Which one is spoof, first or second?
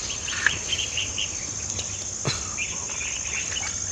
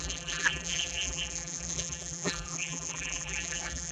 second